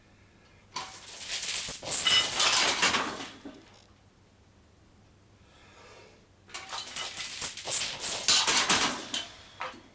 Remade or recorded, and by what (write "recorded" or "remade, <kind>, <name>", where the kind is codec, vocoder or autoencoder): recorded